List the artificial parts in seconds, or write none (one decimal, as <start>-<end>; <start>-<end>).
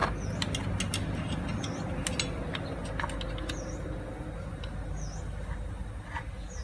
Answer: none